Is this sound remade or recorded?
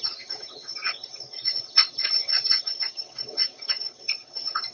remade